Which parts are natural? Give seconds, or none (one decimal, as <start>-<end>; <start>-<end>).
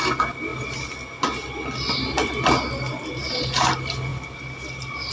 0.0-4.1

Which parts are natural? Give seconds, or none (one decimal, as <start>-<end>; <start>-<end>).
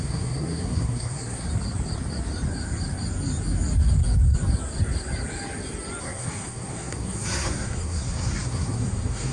1.5-6.0